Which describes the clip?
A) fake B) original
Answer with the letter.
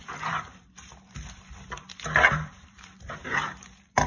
A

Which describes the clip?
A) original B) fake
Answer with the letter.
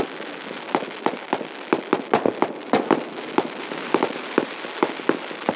A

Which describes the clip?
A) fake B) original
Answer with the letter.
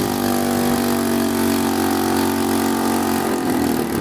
B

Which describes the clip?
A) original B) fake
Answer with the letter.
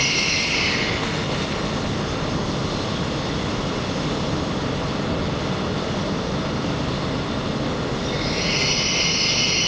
A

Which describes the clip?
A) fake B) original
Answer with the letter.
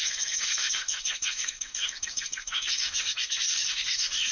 A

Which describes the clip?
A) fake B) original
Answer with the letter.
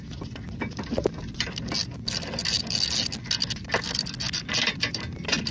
B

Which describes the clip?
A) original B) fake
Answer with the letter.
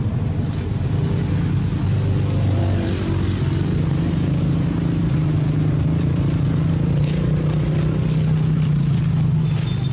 A